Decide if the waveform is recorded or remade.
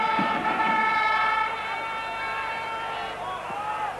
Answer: remade